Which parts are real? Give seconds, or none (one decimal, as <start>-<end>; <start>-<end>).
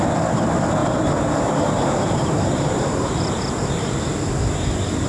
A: 0.0-0.8; 3.1-5.1